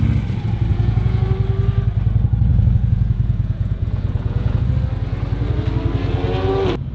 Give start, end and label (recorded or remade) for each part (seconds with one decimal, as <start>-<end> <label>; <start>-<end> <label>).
0.0-0.7 recorded; 0.7-1.2 remade; 1.2-2.5 recorded; 2.5-4.6 remade; 4.6-6.9 recorded